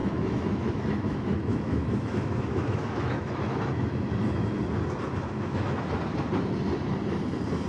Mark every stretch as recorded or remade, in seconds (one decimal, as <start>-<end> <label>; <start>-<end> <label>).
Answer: 0.0-4.6 remade; 4.6-5.1 recorded; 5.1-5.8 remade; 5.8-7.7 recorded